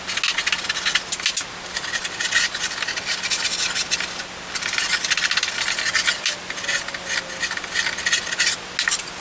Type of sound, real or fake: real